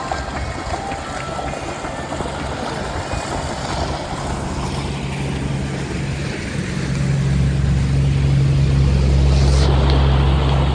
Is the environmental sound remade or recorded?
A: recorded